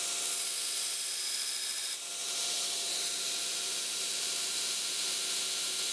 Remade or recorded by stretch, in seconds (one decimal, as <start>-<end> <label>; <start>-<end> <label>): 0.0-2.2 recorded; 2.2-4.7 remade; 4.7-5.9 recorded